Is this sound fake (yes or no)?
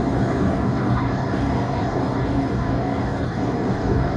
yes